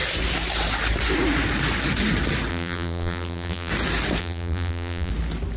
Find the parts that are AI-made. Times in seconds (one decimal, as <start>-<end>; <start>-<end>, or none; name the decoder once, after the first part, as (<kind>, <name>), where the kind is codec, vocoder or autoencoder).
2.5-3.7 (vocoder, BigVGAN v2); 4.2-5.1